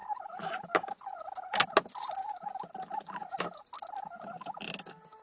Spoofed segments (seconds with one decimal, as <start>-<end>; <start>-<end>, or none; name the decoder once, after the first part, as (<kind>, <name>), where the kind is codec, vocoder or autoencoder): none

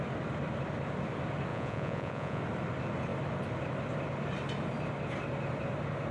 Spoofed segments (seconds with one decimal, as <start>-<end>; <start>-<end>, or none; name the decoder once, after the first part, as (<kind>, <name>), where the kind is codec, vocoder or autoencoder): 1.5-2.4 (vocoder, Vocos)

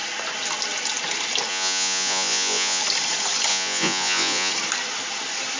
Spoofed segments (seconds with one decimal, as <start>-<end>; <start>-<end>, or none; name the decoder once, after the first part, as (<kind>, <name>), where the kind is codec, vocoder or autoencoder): 1.5-2.8 (vocoder, Vocos); 3.5-4.5

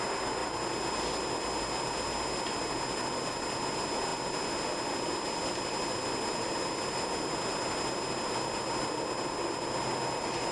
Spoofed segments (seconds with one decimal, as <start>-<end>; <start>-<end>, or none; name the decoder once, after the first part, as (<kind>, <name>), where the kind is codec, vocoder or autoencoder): none

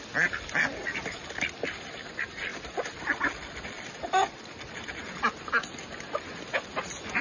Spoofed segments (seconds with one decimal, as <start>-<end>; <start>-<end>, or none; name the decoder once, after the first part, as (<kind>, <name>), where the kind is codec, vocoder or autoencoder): none

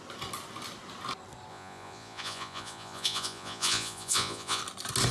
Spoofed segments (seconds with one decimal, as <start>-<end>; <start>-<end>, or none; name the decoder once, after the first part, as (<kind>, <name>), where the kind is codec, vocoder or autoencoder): 1.5-4.6 (vocoder, Vocos)